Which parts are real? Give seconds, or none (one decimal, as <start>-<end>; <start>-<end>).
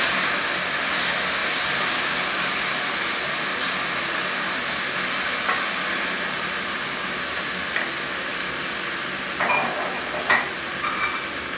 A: 0.0-11.6